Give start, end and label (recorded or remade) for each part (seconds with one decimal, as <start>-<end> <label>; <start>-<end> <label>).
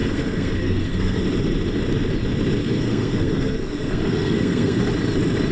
0.0-1.2 remade; 1.2-2.6 recorded; 2.6-4.8 remade; 4.8-5.5 recorded